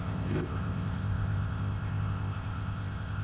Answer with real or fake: fake